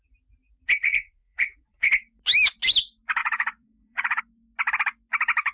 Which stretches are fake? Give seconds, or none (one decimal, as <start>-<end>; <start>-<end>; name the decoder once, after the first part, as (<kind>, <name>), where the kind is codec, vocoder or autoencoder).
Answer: 0.8-1.9 (vocoder, Vocos); 3.2-4.2